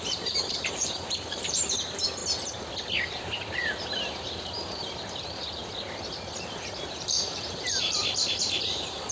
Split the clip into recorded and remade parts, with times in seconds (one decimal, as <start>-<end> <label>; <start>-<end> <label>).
0.0-2.2 remade; 2.2-6.4 recorded; 6.4-8.0 remade; 8.0-8.7 recorded; 8.7-9.1 remade